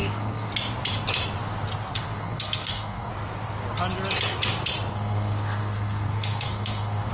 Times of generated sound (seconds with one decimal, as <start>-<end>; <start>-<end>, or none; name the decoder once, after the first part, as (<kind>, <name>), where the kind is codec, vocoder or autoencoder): 0.0-0.5 (codec, SNAC); 1.9-3.1; 4.9-7.1